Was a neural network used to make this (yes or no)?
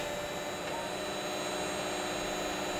no